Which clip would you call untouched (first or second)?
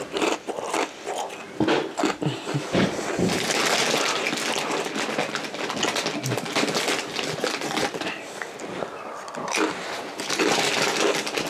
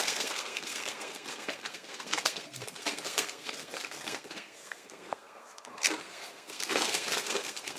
first